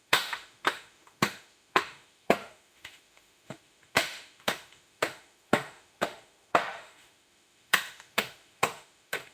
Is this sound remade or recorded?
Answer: remade